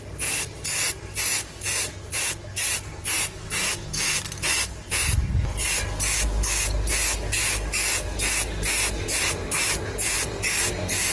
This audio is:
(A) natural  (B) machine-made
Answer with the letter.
A